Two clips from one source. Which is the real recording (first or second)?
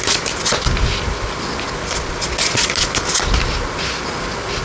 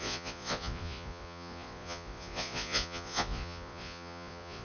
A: first